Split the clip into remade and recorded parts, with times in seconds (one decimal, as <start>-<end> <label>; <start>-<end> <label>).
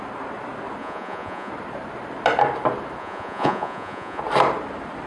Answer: 0.0-0.8 recorded; 0.8-1.5 remade; 1.5-3.0 recorded; 3.0-4.2 remade; 4.2-5.1 recorded